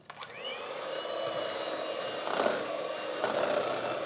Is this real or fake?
fake